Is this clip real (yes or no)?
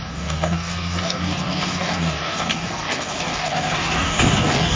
no